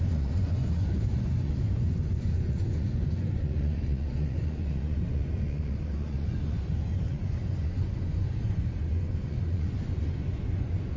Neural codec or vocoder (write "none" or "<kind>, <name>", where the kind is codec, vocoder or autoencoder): vocoder, Vocos